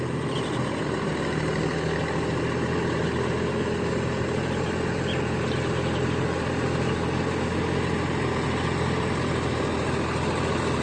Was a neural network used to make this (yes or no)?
no